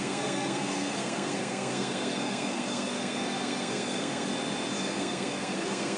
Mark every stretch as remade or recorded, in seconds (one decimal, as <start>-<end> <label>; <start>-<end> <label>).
0.0-4.3 remade; 4.3-4.8 recorded; 4.8-6.0 remade